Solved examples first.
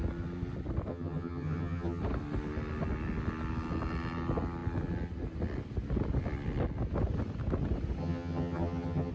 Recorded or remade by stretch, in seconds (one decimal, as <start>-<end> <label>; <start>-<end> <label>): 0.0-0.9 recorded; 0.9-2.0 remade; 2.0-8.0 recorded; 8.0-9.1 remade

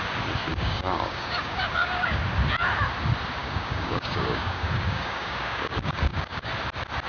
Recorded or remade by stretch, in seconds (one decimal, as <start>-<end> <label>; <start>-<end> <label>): 0.0-0.5 recorded; 0.5-2.2 remade; 2.2-3.4 recorded; 3.4-6.5 remade; 6.5-7.1 recorded

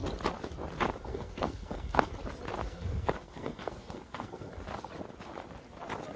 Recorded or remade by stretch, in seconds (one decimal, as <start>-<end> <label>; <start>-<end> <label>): 0.0-1.1 recorded; 1.1-2.1 remade; 2.1-2.6 recorded; 2.6-4.5 remade; 4.5-6.2 recorded